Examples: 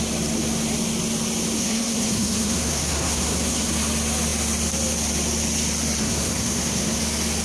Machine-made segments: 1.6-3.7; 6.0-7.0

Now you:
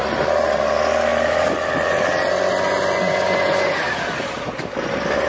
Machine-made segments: none

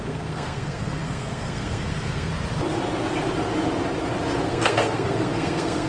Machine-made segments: 0.0-2.3; 4.4-5.9

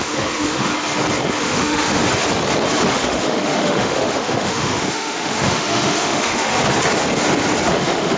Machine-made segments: 0.0-0.7; 1.4-2.0; 2.9-6.5; 7.7-8.2

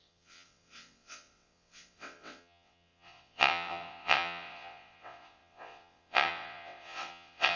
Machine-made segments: 0.0-7.6